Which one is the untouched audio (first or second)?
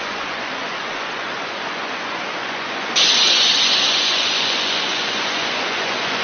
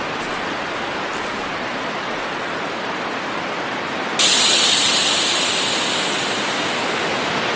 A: second